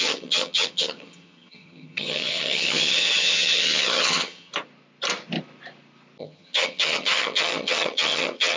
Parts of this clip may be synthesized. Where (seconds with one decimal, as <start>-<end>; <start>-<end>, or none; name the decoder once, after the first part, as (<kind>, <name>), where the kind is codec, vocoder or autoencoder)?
0.0-4.5 (vocoder, HiFi-GAN); 6.2-8.6